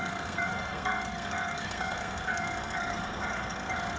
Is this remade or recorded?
remade